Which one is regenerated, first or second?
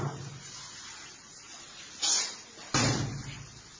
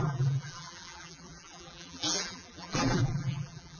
second